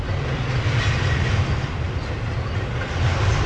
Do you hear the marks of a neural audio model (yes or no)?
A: no